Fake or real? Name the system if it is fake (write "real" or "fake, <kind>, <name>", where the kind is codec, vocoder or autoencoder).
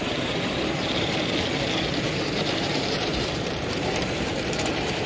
fake, vocoder, BigVGAN v2